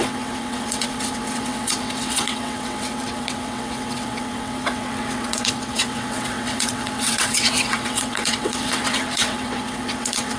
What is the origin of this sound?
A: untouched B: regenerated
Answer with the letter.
B